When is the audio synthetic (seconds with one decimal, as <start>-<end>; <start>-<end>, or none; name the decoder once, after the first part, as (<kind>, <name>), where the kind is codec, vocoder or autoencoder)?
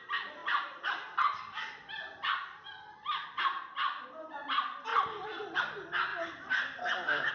0.4-4.1 (vocoder, BigVGAN v2); 4.9-5.6; 6.1-7.3